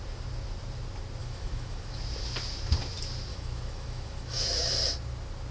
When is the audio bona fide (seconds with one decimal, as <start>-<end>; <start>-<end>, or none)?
0.0-1.2; 2.0-3.3; 4.7-5.5

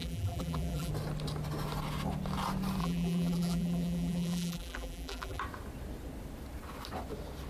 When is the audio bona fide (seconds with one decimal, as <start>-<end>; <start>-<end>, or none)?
0.9-2.8; 5.4-7.5